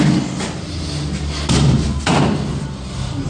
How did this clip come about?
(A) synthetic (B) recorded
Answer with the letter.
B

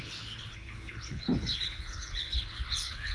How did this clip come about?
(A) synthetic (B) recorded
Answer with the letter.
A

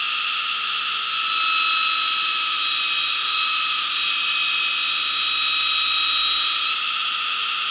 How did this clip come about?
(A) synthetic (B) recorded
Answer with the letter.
B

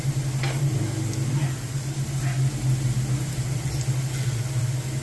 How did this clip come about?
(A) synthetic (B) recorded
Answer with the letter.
B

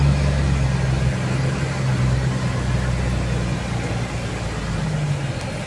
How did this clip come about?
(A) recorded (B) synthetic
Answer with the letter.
A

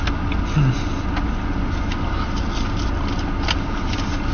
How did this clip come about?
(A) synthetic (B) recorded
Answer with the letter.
B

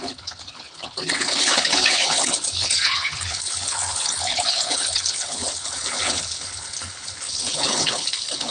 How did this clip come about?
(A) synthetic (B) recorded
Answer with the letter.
A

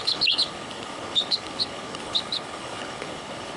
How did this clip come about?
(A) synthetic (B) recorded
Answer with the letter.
A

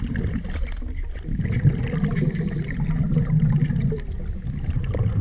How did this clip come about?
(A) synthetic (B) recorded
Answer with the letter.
B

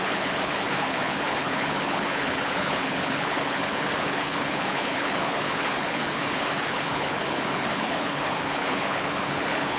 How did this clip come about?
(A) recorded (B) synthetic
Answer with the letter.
B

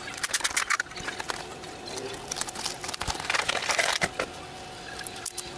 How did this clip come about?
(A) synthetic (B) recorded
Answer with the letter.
B